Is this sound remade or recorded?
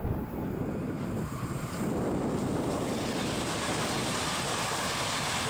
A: recorded